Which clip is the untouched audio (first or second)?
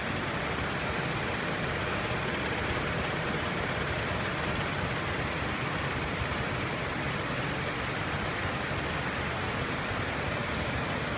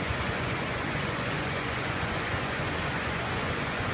first